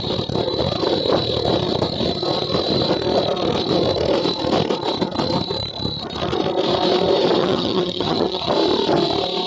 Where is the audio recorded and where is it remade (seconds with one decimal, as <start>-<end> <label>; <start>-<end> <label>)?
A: 0.0-7.4 recorded; 7.4-8.5 remade; 8.5-9.5 recorded